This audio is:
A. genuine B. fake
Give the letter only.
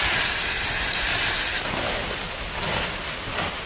A